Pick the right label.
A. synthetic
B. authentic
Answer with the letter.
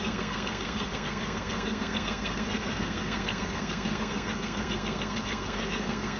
A